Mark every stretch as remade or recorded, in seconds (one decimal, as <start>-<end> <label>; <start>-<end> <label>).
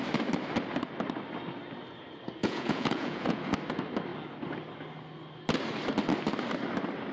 0.0-2.4 recorded; 2.4-3.4 remade; 3.4-7.1 recorded